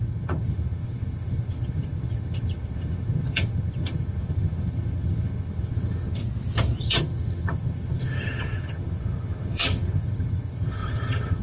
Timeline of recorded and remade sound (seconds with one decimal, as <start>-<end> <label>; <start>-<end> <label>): 0.0-6.2 remade; 6.2-6.8 recorded; 6.8-11.4 remade